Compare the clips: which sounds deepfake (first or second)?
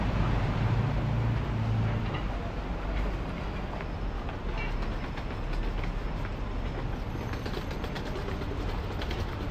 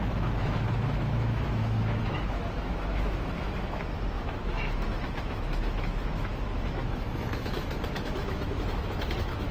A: second